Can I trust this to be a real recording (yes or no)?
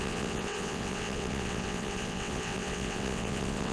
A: no